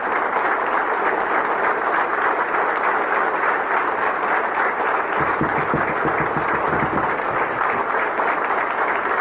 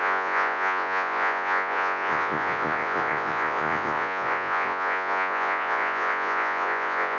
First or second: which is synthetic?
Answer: second